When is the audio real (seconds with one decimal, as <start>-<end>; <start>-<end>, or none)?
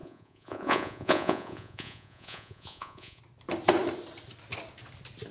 3.2-5.3